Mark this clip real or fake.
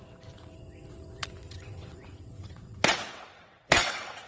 fake